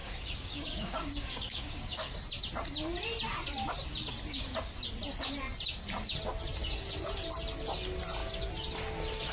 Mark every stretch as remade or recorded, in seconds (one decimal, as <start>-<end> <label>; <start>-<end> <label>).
0.0-2.1 remade; 2.1-9.3 recorded